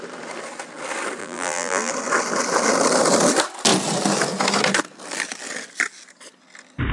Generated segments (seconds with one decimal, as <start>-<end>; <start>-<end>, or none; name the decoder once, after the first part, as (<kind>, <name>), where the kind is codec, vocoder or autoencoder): 1.2-1.9 (vocoder, BigVGAN v2)